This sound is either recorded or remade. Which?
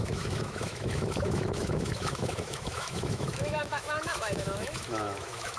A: remade